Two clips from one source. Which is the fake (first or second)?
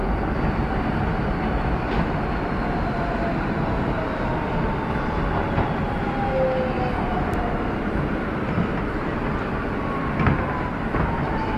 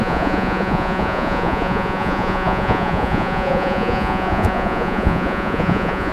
second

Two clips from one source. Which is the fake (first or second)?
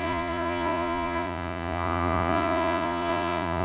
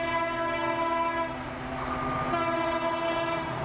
first